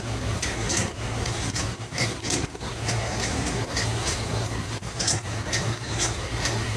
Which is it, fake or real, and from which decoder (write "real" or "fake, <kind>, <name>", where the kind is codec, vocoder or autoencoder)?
fake, codec, SNAC